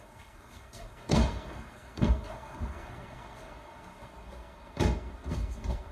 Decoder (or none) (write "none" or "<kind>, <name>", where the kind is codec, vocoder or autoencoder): codec, SNAC